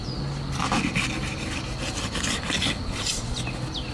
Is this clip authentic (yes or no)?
yes